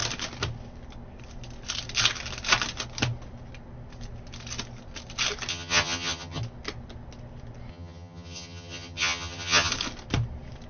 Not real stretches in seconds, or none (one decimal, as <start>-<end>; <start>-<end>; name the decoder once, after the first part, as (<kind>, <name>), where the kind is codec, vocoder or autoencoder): 5.5-6.4 (vocoder, HiFi-GAN); 7.7-9.7